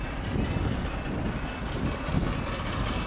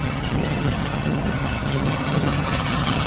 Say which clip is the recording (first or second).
first